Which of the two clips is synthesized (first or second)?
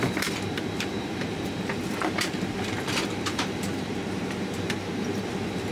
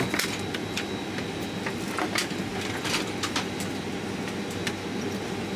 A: first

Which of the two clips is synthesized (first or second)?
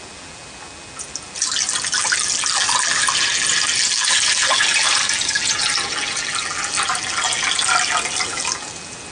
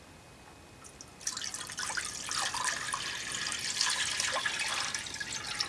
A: first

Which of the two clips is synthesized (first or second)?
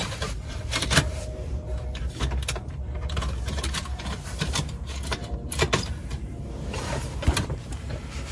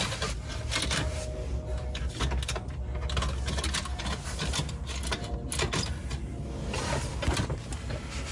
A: first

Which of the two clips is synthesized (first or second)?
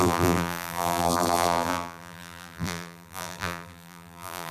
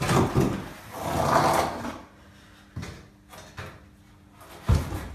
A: first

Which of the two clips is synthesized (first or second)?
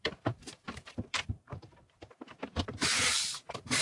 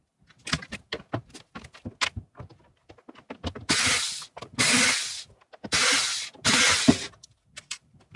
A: first